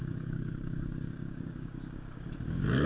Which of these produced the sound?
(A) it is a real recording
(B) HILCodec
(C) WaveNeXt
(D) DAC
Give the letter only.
D